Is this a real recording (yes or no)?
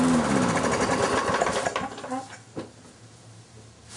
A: yes